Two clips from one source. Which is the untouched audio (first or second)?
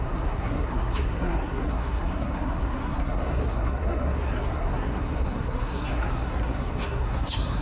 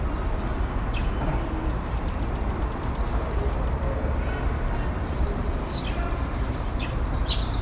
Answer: second